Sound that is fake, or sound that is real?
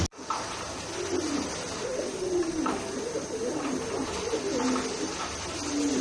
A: real